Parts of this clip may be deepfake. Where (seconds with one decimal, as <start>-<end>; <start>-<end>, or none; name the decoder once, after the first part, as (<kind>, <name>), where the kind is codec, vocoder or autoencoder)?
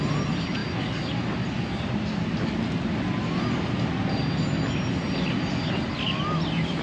none